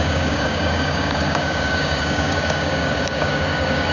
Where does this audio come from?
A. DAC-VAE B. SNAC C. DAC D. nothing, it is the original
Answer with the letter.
C